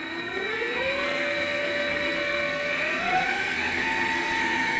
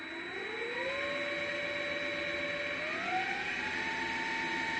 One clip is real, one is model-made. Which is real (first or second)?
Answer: second